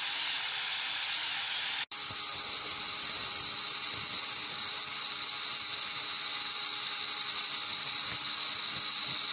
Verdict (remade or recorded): recorded